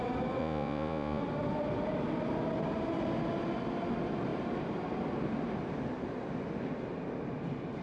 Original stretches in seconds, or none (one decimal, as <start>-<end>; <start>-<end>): 0.0-0.4; 1.2-7.8